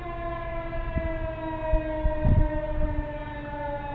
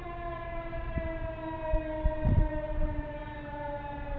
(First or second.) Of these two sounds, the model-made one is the second